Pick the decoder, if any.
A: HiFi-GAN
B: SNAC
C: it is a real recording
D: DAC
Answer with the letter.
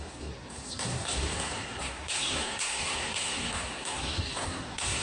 B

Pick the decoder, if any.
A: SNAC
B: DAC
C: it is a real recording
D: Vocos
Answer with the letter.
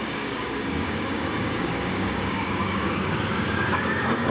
B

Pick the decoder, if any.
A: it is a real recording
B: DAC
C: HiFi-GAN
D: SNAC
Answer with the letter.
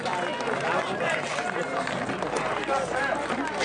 A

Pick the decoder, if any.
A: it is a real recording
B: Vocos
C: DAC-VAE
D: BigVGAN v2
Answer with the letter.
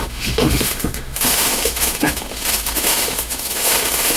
C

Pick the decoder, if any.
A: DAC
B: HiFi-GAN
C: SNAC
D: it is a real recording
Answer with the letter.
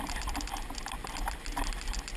D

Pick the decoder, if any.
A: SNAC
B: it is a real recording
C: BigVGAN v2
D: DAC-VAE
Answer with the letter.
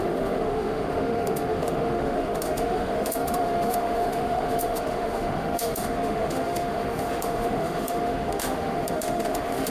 D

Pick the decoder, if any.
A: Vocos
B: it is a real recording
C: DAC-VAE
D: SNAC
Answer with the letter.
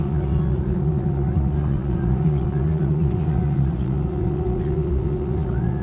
A